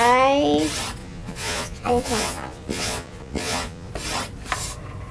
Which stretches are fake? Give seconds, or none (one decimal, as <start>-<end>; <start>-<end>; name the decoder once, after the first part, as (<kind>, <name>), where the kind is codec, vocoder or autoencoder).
1.0-3.9 (vocoder, Vocos)